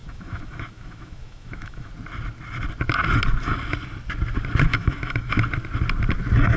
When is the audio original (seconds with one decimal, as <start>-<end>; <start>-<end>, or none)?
1.9-4.7; 5.3-6.6